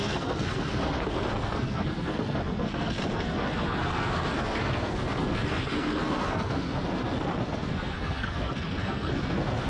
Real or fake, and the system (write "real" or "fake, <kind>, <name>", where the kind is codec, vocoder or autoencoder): fake, codec, SNAC